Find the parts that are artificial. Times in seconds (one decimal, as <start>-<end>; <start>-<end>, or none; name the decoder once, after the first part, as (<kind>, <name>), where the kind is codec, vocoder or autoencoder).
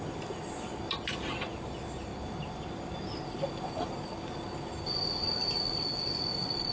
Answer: none